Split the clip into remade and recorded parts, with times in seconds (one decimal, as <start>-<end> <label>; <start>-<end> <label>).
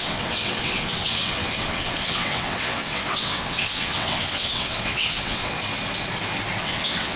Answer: 0.0-5.6 remade; 5.6-6.6 recorded; 6.6-7.2 remade